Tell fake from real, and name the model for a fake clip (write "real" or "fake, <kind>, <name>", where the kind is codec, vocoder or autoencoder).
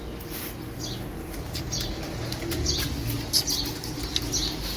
real